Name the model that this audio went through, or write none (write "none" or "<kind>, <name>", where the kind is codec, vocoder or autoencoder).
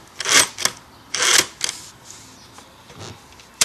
none